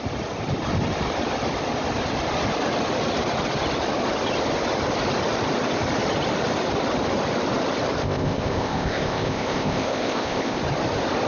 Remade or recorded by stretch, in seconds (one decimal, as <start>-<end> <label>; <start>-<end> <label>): 0.0-8.0 recorded; 8.0-10.6 remade; 10.6-11.3 recorded